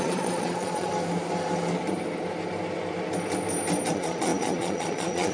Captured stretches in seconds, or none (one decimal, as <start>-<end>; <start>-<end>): 0.9-3.9